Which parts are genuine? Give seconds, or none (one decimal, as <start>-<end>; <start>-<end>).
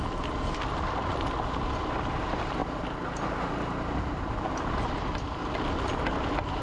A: 0.0-6.6